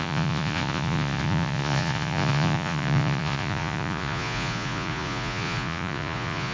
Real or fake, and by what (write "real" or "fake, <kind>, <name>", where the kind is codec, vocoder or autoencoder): fake, vocoder, Vocos